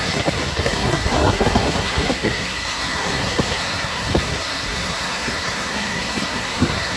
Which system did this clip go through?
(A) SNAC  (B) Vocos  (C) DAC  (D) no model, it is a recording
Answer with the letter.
A